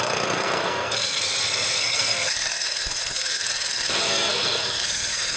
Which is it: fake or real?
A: fake